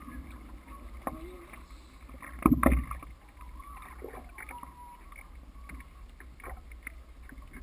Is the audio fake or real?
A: real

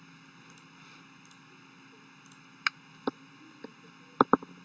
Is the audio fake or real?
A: real